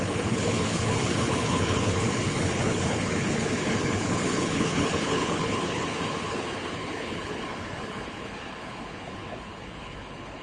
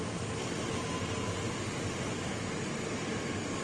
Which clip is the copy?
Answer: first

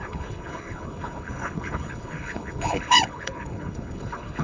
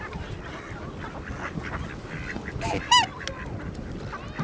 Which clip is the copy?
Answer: first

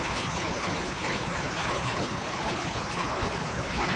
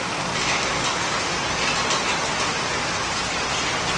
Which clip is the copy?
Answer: first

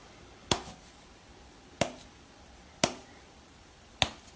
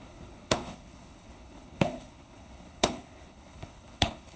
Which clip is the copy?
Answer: second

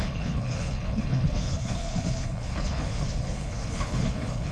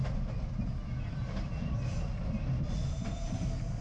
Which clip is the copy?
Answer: first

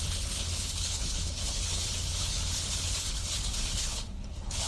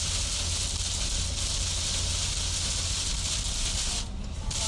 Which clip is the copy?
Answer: first